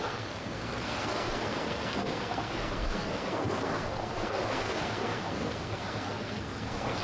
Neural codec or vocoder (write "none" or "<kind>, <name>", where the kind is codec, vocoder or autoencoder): codec, SNAC